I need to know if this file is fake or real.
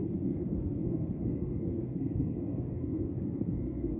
fake